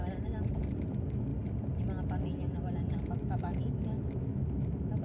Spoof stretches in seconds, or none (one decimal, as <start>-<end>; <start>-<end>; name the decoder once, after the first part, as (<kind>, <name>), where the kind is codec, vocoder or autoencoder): 0.9-1.3 (autoencoder, DAC-VAE); 3.1-5.0